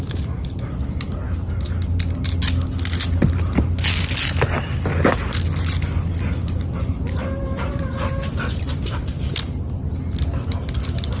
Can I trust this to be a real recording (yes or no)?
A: yes